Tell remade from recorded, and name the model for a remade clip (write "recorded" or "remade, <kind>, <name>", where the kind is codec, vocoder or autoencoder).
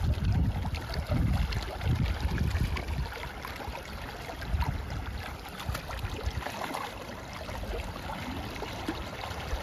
recorded